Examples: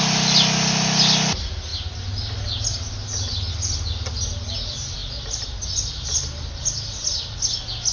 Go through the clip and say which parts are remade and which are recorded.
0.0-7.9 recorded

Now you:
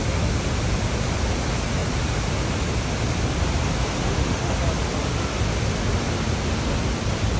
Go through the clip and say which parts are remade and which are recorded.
0.0-3.9 recorded; 3.9-4.6 remade; 4.6-7.4 recorded